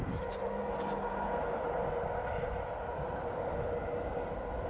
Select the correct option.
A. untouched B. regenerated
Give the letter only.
A